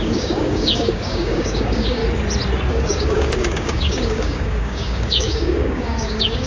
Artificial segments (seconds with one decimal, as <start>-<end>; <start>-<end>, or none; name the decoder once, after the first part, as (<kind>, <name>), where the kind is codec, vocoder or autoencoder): 0.0-2.0 (codec, DAC); 2.7-6.5